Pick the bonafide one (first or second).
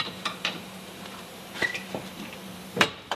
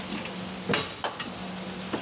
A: second